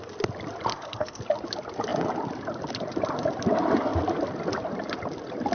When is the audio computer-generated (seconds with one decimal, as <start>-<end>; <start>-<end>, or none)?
0.7-1.2